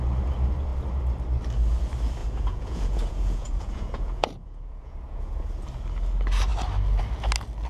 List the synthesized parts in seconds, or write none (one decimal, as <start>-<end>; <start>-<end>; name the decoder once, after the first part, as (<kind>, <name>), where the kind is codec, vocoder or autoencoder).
2.2-5.5 (vocoder, Vocos)